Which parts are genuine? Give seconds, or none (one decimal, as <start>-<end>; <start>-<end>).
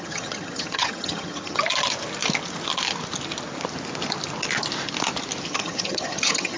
1.6-5.5